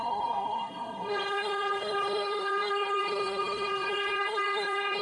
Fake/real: fake